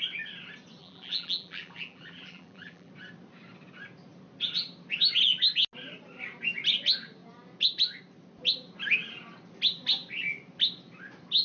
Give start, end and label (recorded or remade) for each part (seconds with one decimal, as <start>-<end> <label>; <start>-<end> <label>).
0.0-0.8 recorded; 0.8-2.9 remade; 2.9-11.4 recorded